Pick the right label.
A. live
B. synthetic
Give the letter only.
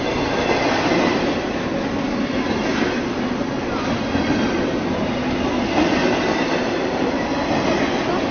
A